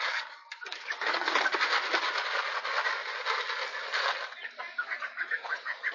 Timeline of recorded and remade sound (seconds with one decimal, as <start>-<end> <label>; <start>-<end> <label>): 0.0-1.5 remade; 1.5-4.7 recorded; 4.7-5.9 remade